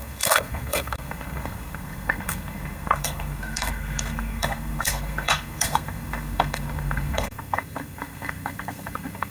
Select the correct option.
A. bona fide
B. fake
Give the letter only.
B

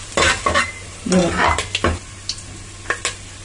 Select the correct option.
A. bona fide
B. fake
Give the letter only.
A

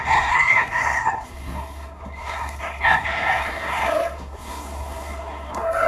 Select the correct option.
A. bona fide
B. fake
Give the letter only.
B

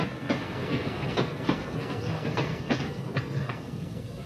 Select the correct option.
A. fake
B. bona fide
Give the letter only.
A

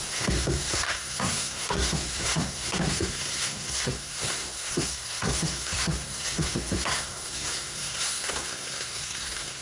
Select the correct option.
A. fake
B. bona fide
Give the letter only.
A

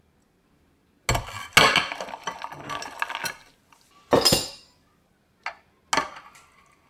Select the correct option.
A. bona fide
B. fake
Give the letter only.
A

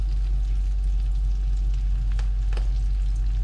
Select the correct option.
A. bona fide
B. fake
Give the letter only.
A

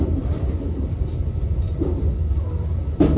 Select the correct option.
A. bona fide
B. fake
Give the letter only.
A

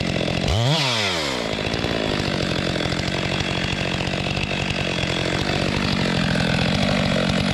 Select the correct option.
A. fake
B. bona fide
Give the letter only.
B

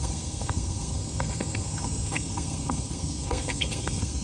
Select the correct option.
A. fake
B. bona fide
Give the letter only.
A